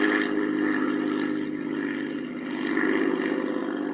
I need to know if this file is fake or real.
real